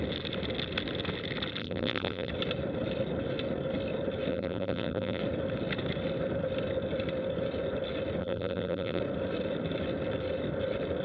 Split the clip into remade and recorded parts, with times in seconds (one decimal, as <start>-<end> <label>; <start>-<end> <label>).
0.0-1.6 recorded; 1.6-2.3 remade; 2.3-4.3 recorded; 4.3-5.2 remade; 5.2-8.2 recorded; 8.2-9.0 remade; 9.0-11.0 recorded